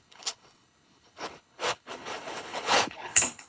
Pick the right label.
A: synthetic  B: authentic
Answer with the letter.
A